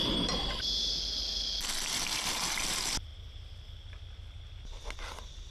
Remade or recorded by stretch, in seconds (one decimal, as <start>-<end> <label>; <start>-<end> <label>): 0.0-5.5 recorded